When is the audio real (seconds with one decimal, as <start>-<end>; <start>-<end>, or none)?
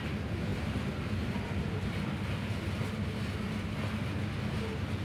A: 0.0-5.0